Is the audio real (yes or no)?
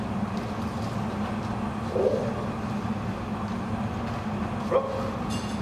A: yes